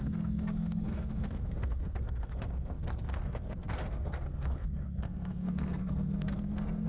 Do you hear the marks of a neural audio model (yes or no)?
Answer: yes